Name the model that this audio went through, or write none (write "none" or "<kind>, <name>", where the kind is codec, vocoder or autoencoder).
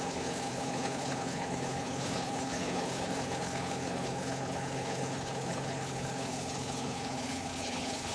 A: codec, HILCodec